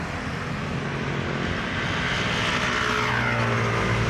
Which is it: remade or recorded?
recorded